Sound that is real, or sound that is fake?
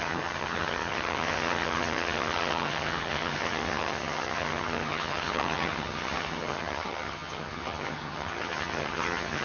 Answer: fake